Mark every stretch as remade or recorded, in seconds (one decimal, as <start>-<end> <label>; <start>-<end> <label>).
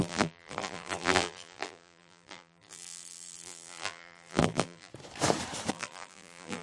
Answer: 0.0-4.9 remade; 4.9-5.7 recorded; 5.7-6.6 remade